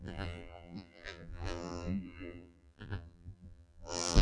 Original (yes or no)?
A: no